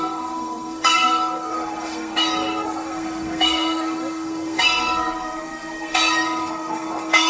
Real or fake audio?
fake